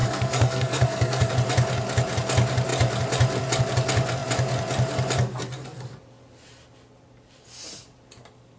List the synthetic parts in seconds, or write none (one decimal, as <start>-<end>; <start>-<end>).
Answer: 0.0-1.3